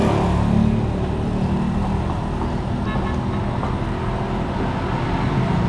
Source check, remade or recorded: recorded